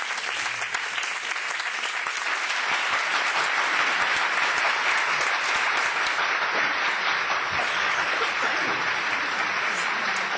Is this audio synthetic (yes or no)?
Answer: no